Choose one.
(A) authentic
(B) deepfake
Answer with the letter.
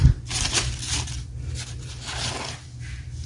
A